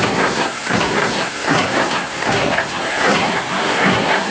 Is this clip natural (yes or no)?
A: no